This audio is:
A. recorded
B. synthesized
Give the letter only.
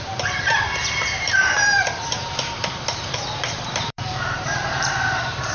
B